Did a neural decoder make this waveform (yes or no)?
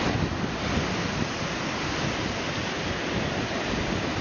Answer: no